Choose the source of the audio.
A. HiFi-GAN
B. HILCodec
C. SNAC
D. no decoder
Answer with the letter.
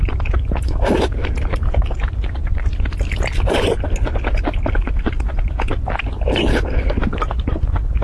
D